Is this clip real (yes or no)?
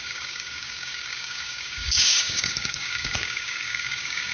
no